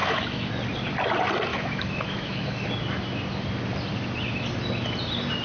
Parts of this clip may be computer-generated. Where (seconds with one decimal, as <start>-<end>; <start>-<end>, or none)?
0.0-0.5; 1.5-2.7